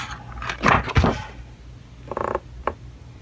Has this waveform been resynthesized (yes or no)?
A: no